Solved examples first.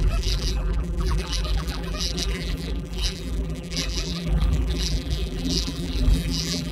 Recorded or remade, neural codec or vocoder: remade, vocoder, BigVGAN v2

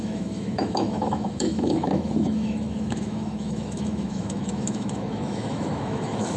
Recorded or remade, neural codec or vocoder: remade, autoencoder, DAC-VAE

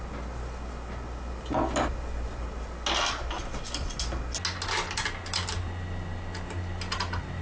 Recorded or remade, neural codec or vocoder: recorded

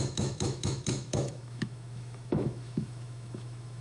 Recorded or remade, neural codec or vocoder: remade, autoencoder, DAC-VAE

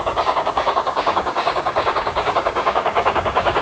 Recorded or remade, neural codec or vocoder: remade, codec, DAC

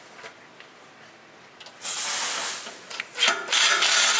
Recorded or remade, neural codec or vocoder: recorded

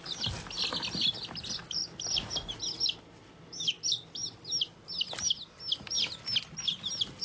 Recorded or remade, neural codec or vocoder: recorded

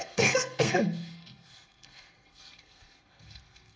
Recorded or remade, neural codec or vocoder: remade, codec, SNAC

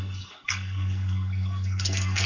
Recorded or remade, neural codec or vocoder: remade, codec, SNAC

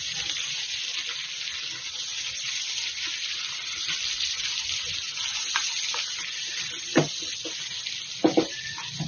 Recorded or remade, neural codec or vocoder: recorded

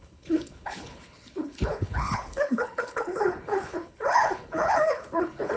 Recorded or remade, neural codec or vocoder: remade, codec, HILCodec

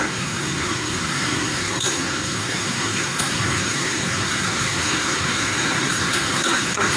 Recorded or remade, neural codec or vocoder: remade, codec, SNAC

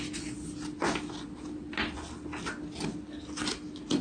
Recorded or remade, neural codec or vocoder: recorded